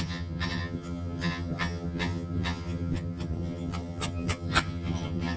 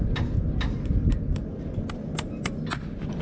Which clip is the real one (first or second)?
second